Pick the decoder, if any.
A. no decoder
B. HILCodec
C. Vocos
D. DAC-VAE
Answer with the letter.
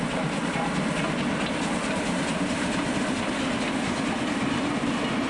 A